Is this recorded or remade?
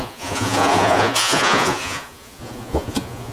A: remade